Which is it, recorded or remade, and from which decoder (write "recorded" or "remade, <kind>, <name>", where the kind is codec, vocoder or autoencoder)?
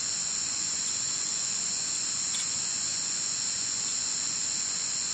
remade, vocoder, Vocos